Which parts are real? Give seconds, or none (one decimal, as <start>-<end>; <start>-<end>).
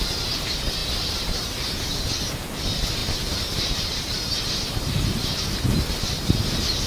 0.0-0.8; 1.7-3.0; 5.7-6.9